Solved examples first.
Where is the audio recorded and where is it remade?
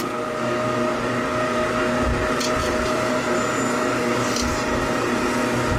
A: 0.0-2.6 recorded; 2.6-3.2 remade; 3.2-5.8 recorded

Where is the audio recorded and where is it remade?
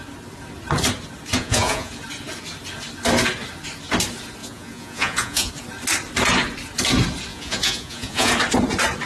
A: 0.0-1.4 recorded; 1.4-1.9 remade; 1.9-4.4 recorded; 4.4-5.5 remade; 5.5-7.3 recorded; 7.3-8.3 remade; 8.3-9.1 recorded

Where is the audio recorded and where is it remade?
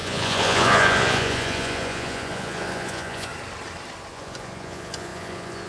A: 0.0-3.3 remade; 3.3-4.1 recorded; 4.1-5.7 remade